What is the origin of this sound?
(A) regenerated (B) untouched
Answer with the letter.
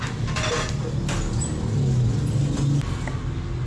B